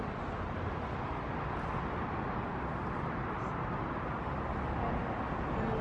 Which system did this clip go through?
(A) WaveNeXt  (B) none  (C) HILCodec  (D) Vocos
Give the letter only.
B